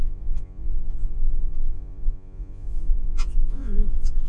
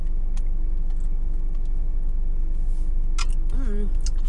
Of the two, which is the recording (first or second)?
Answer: second